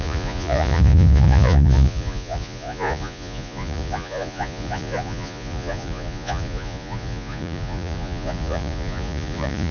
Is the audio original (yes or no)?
no